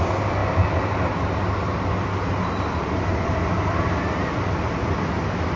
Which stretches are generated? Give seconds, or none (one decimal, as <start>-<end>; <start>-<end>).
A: none